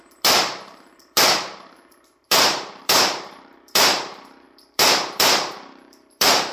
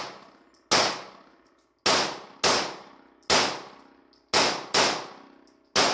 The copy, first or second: first